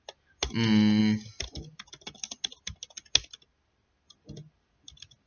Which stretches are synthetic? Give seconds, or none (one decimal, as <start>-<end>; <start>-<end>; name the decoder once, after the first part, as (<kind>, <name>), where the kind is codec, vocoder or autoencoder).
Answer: none